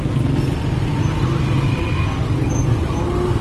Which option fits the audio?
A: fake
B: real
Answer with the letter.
B